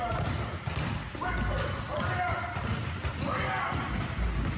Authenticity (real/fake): real